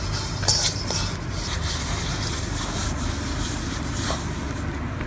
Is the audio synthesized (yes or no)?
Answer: no